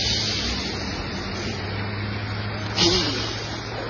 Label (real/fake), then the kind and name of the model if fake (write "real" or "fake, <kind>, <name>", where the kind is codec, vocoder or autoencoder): real